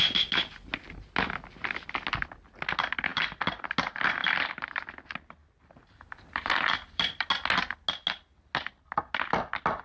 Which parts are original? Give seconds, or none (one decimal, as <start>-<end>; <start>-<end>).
0.0-3.1; 3.7-4.2; 4.9-5.4; 7.3-9.8